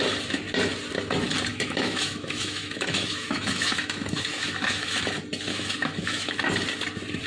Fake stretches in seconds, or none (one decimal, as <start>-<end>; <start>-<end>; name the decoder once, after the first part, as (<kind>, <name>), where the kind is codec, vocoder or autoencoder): 1.5-5.0 (autoencoder, DAC-VAE); 5.5-6.5

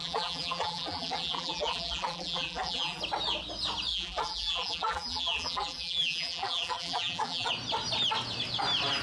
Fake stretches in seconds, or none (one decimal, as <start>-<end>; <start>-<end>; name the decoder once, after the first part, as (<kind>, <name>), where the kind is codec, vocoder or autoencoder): 0.0-3.0 (vocoder, BigVGAN v2); 3.9-7.5

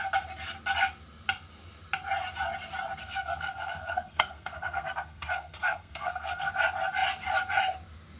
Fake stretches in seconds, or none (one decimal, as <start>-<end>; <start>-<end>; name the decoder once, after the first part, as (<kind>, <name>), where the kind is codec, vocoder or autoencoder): 3.0-6.5 (codec, SNAC)

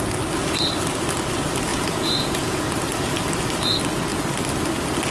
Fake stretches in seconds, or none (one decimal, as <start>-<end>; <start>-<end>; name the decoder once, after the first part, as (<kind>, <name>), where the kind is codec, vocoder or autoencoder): 1.7-2.7 (vocoder, Vocos)